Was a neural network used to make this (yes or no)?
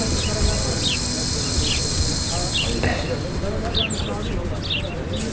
no